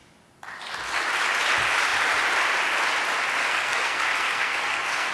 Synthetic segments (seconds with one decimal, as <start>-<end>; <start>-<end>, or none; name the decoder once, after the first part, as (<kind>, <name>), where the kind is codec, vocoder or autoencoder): 3.4-5.1 (codec, SNAC)